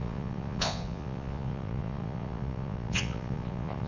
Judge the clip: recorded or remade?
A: remade